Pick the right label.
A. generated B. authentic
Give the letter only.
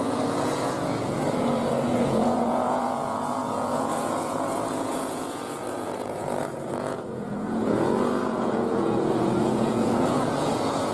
A